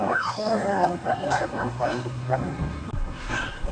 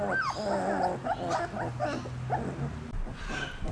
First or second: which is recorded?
second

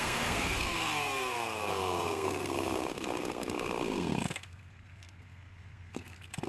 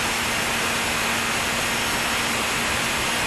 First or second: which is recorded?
second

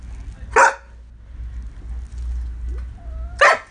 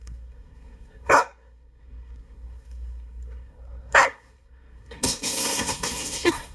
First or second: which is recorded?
first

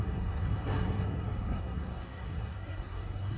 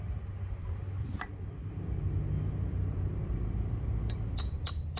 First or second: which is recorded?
second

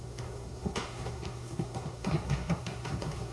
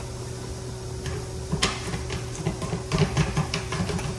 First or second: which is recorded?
second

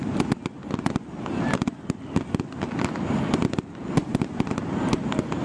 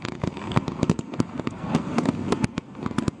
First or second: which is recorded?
first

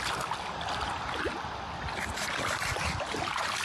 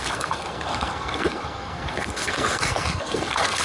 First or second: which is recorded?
first